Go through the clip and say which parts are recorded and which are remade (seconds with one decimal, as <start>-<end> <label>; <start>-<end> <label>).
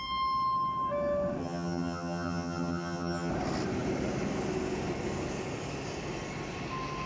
0.0-1.4 recorded; 1.4-3.3 remade; 3.3-7.1 recorded